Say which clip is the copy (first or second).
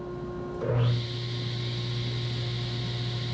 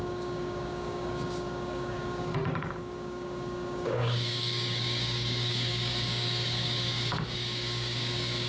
second